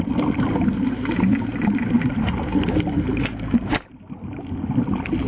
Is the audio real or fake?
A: real